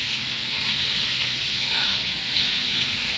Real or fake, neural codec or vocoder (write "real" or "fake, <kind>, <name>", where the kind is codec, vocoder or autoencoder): fake, codec, SNAC